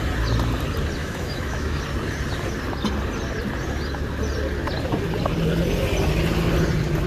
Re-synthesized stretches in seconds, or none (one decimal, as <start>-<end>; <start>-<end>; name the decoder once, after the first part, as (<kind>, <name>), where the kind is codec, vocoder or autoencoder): 1.0-1.8 (autoencoder, DAC-VAE)

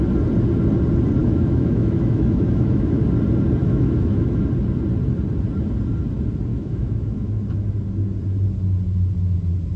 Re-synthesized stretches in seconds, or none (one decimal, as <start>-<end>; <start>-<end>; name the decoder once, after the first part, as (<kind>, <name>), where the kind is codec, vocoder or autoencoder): 1.2-3.0 (autoencoder, DAC-VAE); 3.6-4.4; 6.5-7.3

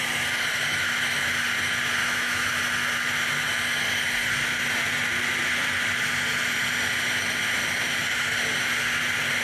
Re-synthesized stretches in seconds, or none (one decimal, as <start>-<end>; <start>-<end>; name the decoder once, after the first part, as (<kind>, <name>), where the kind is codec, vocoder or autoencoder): 2.0-2.5 (autoencoder, DAC-VAE)

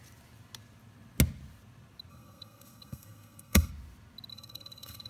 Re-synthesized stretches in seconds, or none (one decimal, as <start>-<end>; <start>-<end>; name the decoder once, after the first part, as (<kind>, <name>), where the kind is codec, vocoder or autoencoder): 2.1-3.7 (codec, SNAC); 4.3-5.1

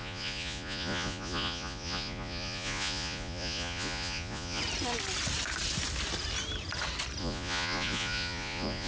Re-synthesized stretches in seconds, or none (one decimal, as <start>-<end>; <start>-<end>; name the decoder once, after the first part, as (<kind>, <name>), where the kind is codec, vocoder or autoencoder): 0.0-4.6 (vocoder, Vocos); 7.2-8.9

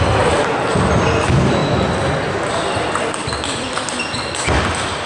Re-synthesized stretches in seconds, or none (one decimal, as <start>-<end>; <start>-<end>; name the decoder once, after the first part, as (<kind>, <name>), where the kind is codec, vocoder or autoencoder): none

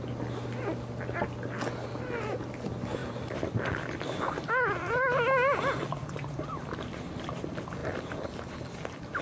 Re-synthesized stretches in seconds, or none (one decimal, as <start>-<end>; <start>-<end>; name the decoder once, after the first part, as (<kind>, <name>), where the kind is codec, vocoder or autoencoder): none